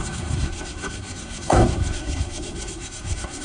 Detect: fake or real fake